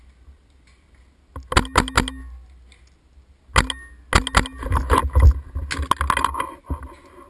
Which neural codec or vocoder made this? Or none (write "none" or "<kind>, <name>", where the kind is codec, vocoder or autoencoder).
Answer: none